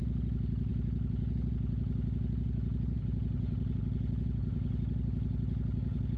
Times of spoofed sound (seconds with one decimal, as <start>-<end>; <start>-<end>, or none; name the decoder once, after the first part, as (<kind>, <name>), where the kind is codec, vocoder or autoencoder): none